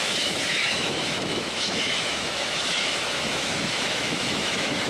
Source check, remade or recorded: remade